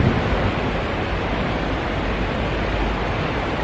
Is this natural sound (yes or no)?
yes